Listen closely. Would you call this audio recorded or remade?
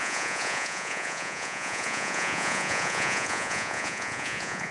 remade